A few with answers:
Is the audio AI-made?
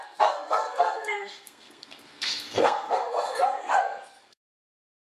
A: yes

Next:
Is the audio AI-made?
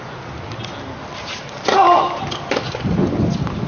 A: no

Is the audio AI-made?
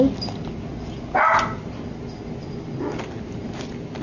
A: no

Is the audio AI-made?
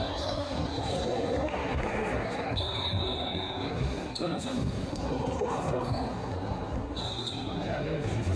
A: yes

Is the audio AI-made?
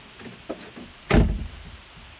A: no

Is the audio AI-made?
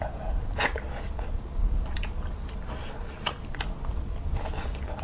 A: no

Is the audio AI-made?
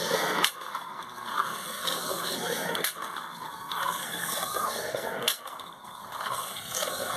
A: yes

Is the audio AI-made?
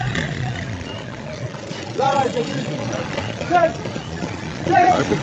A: yes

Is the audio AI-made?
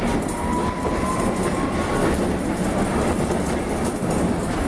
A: no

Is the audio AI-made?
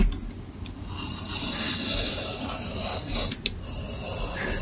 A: no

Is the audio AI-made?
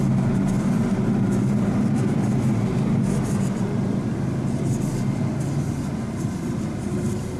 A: no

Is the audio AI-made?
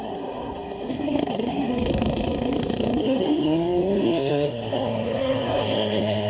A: yes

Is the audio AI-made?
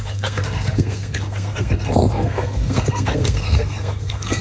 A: yes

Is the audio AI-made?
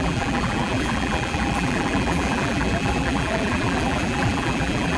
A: yes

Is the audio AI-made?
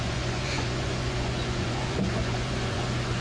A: yes